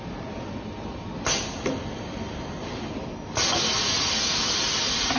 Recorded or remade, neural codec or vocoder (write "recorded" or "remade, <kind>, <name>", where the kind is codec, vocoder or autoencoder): recorded